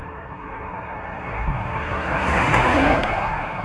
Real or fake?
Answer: fake